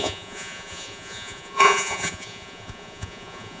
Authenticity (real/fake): fake